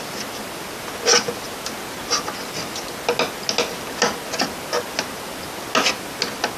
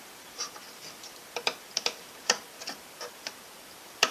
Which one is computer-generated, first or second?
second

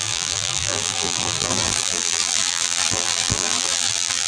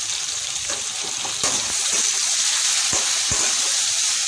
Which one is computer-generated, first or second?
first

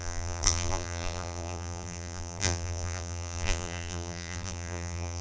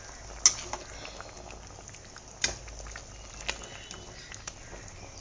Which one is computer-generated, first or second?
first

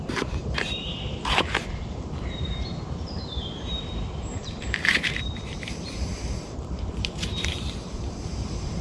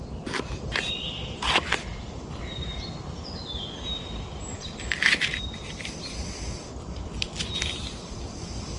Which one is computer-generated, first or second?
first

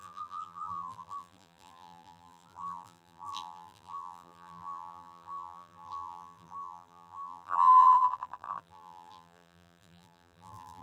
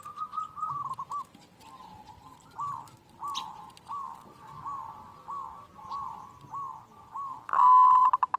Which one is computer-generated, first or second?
first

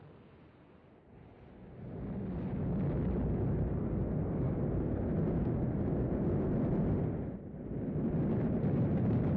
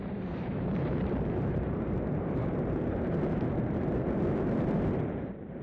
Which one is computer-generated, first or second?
second